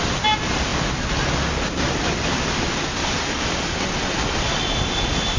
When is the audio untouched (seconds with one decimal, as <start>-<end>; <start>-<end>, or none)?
0.0-5.4